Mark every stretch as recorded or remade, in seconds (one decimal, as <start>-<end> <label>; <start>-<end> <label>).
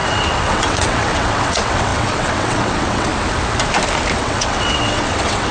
0.0-3.1 remade; 3.1-4.2 recorded; 4.2-5.5 remade